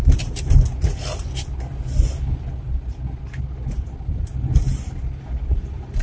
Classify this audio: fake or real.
real